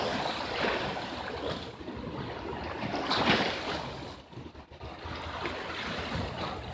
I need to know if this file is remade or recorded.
recorded